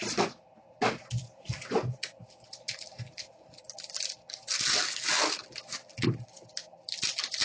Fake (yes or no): no